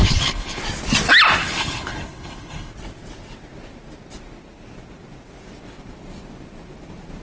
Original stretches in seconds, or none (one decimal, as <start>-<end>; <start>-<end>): 0.6-1.4; 2.7-7.2